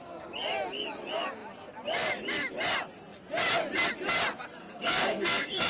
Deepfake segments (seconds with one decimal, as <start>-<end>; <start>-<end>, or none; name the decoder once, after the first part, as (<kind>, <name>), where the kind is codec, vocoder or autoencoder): 4.6-5.7 (codec, SNAC)